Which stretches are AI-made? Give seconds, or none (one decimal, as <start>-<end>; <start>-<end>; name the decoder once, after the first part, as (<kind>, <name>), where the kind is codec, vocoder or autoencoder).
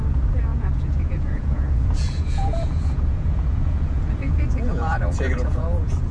0.0-6.1 (vocoder, Vocos)